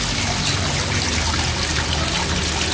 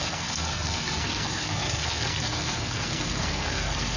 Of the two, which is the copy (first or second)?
second